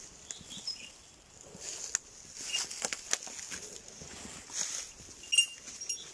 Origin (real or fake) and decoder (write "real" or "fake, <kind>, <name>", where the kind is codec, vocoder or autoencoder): real